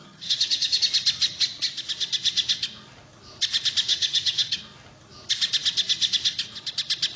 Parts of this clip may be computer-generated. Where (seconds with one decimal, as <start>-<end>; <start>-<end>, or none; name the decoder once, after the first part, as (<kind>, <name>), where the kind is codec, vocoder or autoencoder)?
0.0-0.8 (vocoder, HiFi-GAN); 3.9-4.6